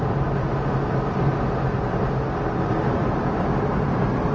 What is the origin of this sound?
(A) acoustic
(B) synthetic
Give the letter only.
A